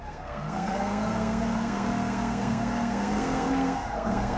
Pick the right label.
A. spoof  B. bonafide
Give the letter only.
A